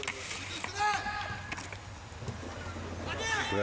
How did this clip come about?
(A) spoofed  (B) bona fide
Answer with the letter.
B